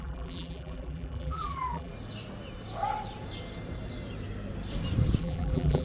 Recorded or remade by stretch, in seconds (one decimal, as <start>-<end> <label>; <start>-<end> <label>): 0.0-1.9 remade; 1.9-5.2 recorded; 5.2-5.8 remade